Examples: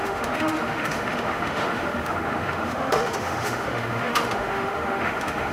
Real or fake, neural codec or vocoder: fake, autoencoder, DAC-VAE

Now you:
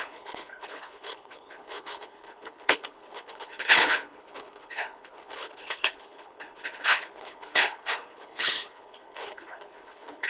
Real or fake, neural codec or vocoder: fake, codec, HILCodec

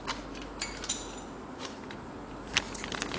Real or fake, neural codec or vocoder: real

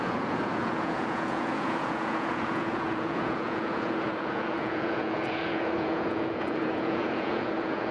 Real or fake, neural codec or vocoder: fake, vocoder, Vocos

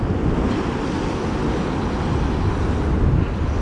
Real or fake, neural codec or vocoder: real